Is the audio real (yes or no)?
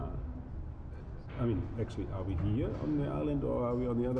yes